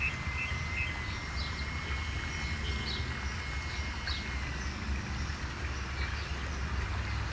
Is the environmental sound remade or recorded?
recorded